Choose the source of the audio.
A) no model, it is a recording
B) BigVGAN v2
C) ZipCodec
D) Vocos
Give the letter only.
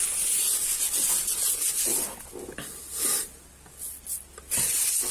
A